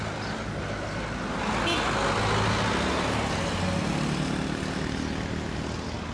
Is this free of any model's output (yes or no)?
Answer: yes